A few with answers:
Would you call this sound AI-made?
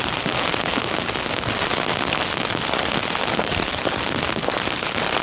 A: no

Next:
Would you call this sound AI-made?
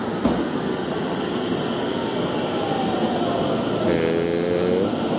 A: no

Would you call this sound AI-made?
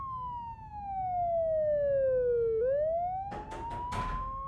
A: no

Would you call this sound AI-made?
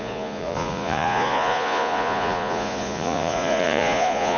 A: yes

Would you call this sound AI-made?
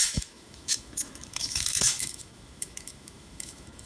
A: yes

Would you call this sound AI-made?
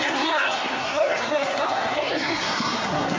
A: yes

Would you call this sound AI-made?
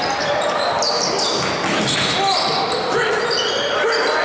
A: no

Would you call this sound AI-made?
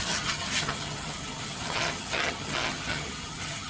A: yes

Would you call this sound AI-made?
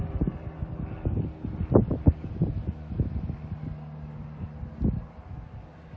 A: no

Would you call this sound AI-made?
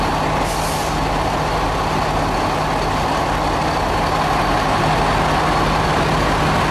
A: no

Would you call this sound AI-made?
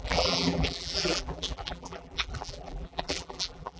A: yes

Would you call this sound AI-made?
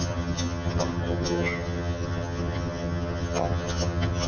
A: yes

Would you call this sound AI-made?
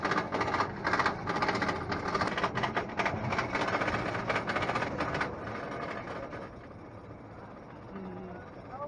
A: no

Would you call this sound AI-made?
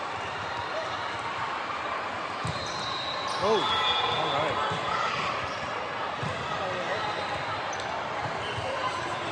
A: no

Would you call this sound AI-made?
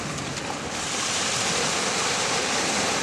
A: yes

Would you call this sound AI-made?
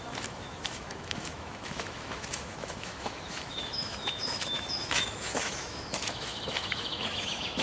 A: yes